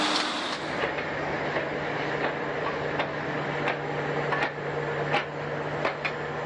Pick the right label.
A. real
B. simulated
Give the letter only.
A